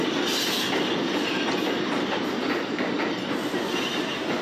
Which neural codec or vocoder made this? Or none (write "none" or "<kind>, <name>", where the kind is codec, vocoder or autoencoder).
none